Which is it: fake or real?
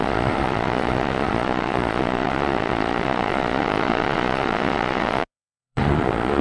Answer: fake